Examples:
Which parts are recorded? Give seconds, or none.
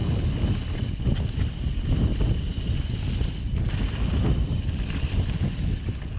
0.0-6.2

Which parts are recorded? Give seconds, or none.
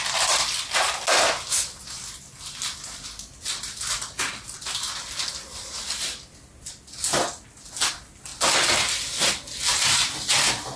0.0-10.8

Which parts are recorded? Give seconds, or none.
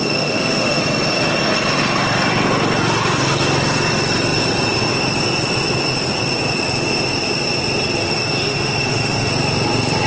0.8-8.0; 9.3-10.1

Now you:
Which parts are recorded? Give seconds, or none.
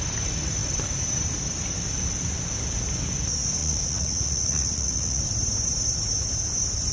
0.0-3.6; 5.2-6.9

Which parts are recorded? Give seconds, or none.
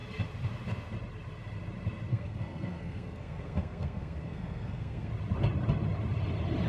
0.0-2.1; 5.1-6.7